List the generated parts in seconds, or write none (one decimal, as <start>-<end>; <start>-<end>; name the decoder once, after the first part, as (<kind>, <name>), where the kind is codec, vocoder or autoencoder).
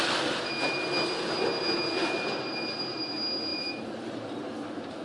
2.0-3.0 (vocoder, BigVGAN v2); 3.5-4.4